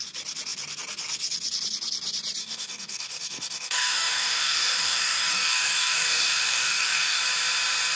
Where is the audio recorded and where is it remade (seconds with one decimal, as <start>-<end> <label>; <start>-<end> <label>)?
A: 0.0-2.4 recorded; 2.4-7.2 remade; 7.2-8.0 recorded